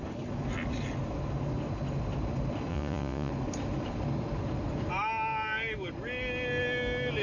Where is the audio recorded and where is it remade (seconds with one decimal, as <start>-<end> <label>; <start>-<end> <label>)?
0.0-2.7 recorded; 2.7-3.3 remade; 3.3-7.2 recorded